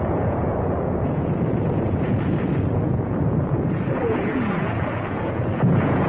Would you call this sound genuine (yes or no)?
no